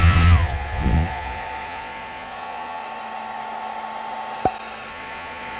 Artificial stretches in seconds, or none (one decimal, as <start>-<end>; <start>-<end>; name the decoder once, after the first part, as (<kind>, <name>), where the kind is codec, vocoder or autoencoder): 0.0-2.8 (vocoder, Vocos); 4.9-5.6